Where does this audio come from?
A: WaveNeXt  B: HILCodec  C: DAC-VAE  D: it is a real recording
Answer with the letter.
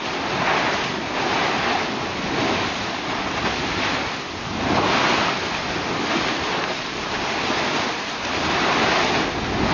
D